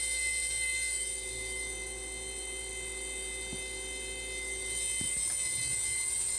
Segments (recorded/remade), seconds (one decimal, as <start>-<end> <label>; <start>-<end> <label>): 0.0-6.4 recorded